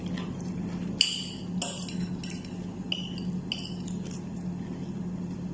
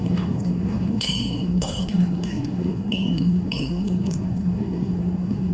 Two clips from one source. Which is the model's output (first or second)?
second